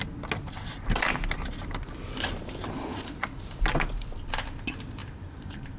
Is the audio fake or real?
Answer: real